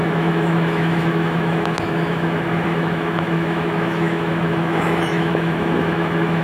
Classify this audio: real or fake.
fake